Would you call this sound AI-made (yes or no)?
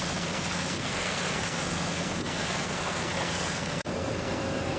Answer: yes